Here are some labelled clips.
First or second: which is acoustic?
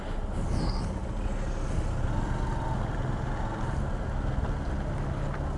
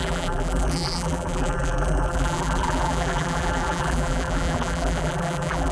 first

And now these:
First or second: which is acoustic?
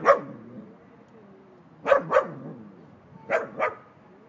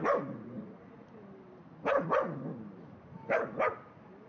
first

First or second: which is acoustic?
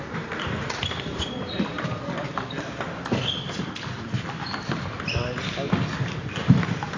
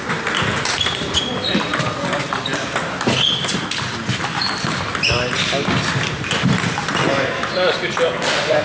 second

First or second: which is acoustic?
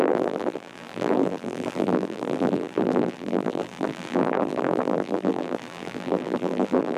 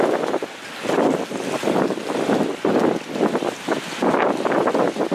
second